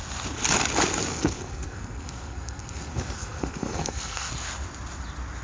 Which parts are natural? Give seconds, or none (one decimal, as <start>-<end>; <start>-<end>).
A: 0.0-1.1; 4.3-5.4